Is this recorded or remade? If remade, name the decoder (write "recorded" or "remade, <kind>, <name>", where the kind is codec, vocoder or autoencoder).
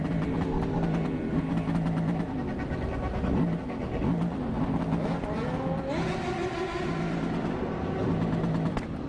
recorded